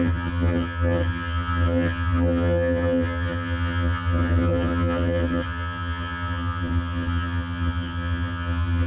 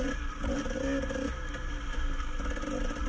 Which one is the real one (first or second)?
second